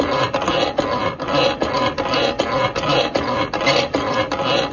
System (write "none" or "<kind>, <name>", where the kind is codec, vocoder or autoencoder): none